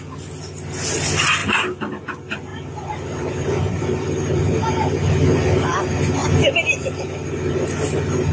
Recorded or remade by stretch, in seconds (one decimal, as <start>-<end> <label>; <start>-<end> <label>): 0.0-1.4 recorded; 1.4-1.9 remade; 1.9-2.5 recorded; 2.5-4.6 remade; 4.6-8.3 recorded